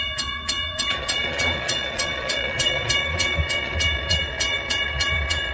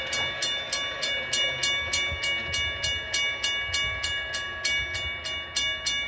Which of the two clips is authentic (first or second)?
second